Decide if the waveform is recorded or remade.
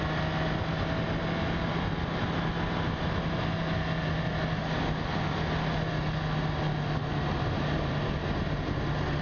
recorded